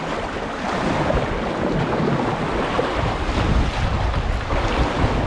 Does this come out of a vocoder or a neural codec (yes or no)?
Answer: no